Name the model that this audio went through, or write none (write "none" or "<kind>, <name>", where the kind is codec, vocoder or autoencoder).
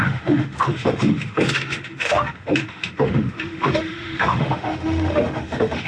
autoencoder, DAC-VAE